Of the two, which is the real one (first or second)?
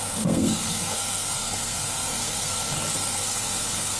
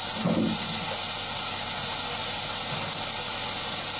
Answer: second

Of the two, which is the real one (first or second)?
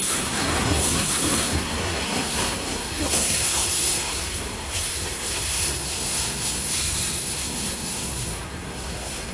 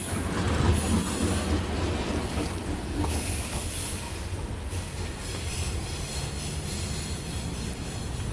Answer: second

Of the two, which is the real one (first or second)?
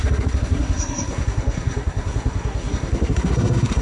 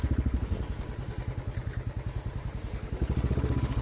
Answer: second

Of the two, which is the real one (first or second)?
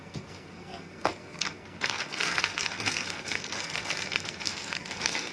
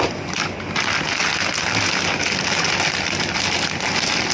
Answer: second